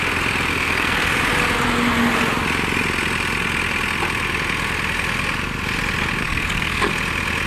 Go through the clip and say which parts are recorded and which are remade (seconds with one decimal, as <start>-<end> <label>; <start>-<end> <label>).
0.0-0.5 recorded; 0.5-1.2 remade; 1.2-6.2 recorded; 6.2-6.9 remade; 6.9-7.5 recorded